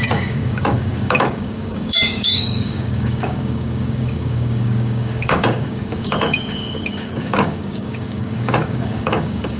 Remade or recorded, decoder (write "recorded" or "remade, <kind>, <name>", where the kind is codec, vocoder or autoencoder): remade, codec, DAC